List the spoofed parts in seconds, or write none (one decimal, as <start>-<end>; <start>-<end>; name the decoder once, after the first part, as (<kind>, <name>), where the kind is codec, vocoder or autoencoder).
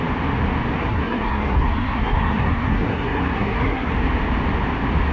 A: 0.8-3.9 (codec, SNAC)